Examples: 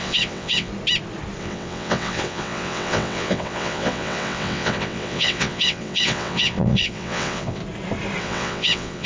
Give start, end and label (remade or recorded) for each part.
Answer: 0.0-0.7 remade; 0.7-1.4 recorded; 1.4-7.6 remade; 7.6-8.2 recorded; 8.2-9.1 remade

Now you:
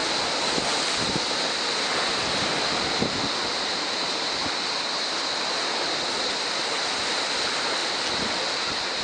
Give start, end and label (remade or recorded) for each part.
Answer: 0.0-9.0 recorded

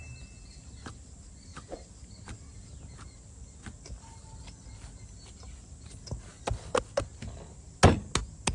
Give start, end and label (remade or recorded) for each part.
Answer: 0.0-8.5 recorded